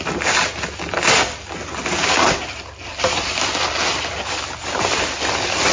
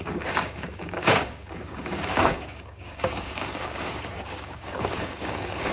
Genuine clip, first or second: first